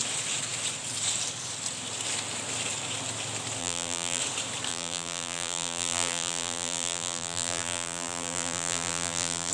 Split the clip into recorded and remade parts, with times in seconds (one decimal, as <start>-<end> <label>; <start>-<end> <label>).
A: 0.0-3.6 recorded; 3.6-4.2 remade; 4.2-4.7 recorded; 4.7-9.5 remade